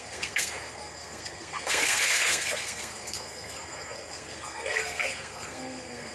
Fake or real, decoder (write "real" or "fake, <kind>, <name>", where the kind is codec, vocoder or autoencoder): fake, codec, SNAC